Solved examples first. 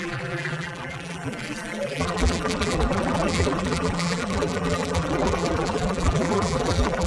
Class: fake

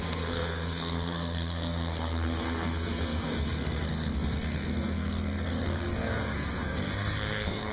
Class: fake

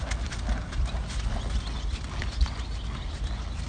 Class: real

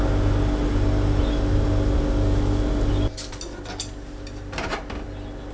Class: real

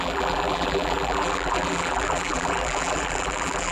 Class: fake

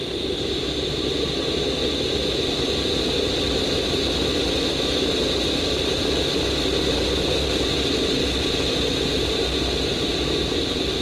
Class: real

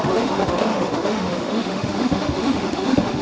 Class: fake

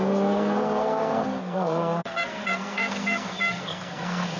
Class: fake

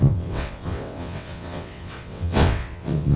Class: fake